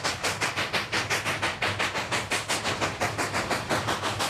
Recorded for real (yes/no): yes